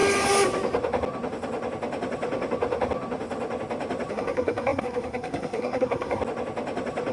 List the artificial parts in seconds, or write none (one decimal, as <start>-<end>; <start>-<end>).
4.1-6.2